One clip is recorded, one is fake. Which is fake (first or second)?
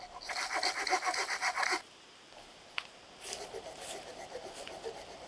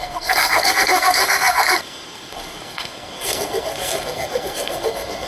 second